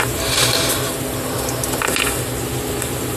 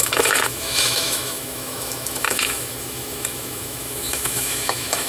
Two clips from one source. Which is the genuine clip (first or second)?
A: first